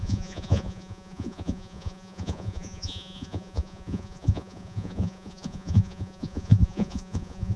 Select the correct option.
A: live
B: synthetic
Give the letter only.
B